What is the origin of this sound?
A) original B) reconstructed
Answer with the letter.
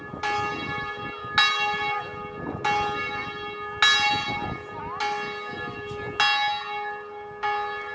A